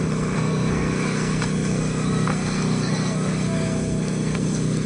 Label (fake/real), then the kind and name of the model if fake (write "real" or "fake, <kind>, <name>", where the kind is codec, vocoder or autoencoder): fake, codec, SNAC